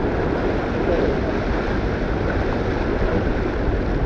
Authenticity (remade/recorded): recorded